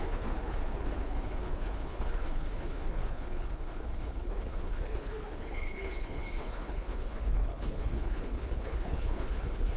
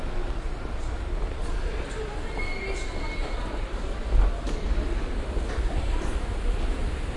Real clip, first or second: second